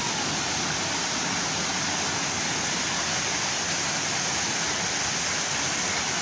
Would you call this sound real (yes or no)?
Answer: yes